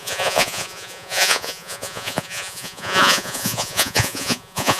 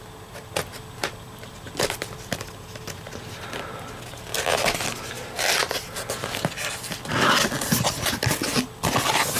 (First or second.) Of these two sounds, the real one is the second